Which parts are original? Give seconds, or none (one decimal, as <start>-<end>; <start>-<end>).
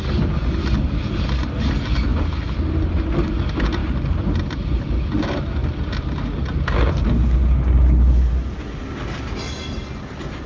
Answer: 0.0-10.5